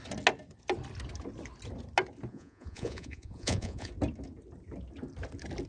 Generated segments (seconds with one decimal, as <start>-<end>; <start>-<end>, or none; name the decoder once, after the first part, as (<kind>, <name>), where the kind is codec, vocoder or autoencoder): 2.3-3.9 (vocoder, Vocos)